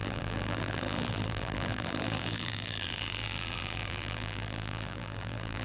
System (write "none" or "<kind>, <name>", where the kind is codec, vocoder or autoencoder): vocoder, BigVGAN v2